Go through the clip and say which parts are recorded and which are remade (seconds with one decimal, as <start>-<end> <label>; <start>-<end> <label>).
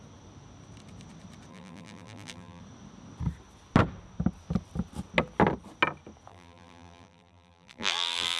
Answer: 0.0-1.5 recorded; 1.5-2.6 remade; 2.6-6.3 recorded; 6.3-8.4 remade